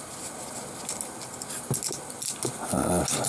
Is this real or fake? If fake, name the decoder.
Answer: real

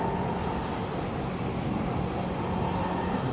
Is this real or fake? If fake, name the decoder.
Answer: real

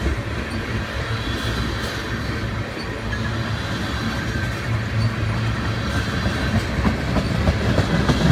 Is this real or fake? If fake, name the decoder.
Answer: real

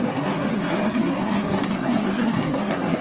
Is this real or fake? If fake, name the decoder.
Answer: fake, codec, SNAC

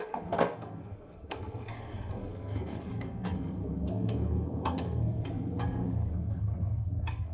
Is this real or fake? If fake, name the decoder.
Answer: fake, codec, SNAC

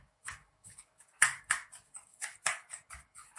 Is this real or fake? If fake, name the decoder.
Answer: fake, codec, DAC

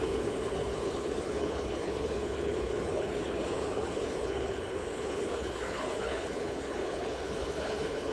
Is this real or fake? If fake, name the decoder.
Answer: fake, codec, HILCodec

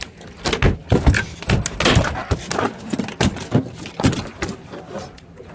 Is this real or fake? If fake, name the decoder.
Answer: real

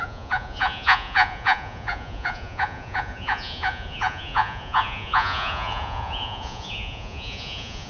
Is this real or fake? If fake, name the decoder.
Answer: fake, vocoder, Vocos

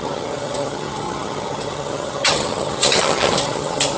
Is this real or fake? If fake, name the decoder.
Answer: fake, vocoder, HiFi-GAN